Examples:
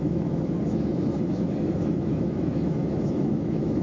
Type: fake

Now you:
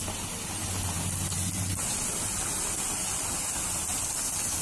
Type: real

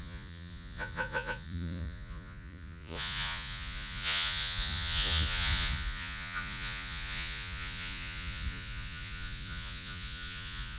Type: fake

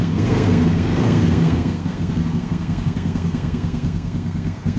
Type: fake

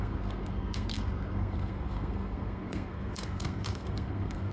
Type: fake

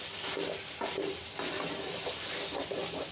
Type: fake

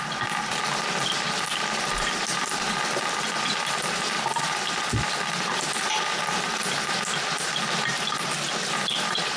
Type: fake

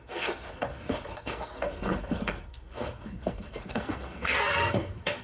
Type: fake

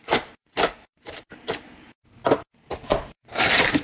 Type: fake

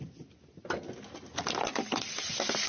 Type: real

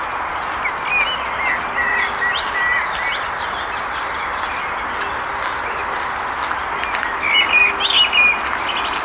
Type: real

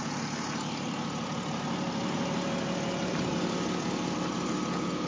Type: real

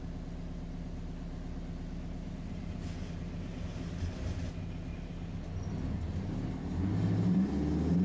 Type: real